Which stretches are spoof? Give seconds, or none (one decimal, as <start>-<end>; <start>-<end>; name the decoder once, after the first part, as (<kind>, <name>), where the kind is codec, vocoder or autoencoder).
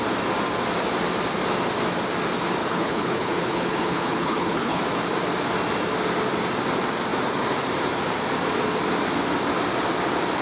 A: 2.6-4.8 (codec, HILCodec)